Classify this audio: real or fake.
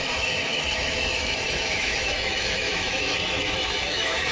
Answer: fake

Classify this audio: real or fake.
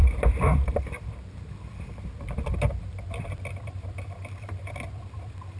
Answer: fake